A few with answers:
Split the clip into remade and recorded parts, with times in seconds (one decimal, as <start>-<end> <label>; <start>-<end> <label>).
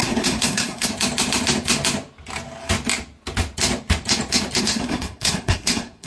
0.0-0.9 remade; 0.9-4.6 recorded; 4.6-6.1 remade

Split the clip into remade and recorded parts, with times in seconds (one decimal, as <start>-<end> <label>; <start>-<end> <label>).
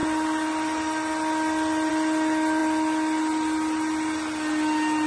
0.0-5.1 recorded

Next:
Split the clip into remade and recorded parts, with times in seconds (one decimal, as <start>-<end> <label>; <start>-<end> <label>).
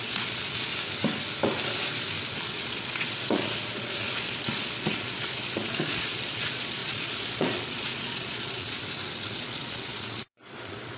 0.0-0.7 remade; 0.7-2.4 recorded; 2.4-8.8 remade; 8.8-9.3 recorded; 9.3-11.0 remade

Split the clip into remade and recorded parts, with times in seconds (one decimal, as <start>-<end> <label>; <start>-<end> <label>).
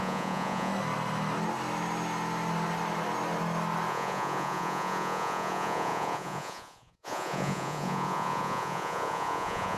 0.0-0.7 remade; 0.7-3.9 recorded; 3.9-9.8 remade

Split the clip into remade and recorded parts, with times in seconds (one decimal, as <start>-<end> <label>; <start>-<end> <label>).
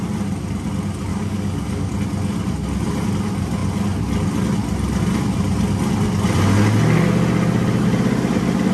0.0-1.1 recorded; 1.1-1.9 remade; 1.9-8.7 recorded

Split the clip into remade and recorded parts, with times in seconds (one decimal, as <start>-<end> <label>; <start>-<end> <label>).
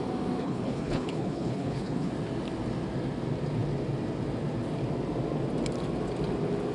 0.0-0.4 recorded; 0.4-2.1 remade; 2.1-6.7 recorded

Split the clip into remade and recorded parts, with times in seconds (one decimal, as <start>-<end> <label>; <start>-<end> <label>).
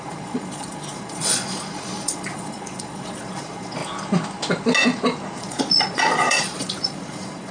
0.0-3.8 remade; 3.8-5.4 recorded; 5.4-7.5 remade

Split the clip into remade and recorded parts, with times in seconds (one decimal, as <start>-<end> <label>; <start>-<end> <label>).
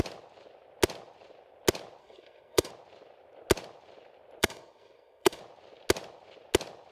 0.0-2.0 recorded; 2.0-2.7 remade; 2.7-4.4 recorded; 4.4-5.4 remade; 5.4-6.9 recorded